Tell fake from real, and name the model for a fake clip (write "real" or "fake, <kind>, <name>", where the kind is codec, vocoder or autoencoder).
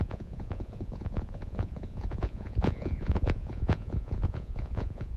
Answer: fake, vocoder, Vocos